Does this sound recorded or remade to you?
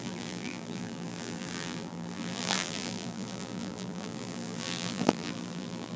remade